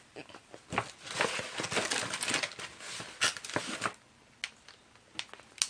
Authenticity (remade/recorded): recorded